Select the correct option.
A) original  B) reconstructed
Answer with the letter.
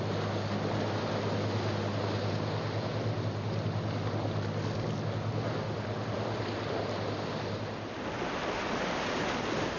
A